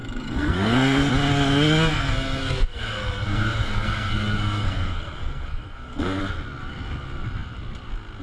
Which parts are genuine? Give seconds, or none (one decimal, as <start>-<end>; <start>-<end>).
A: 1.1-1.9; 6.2-8.2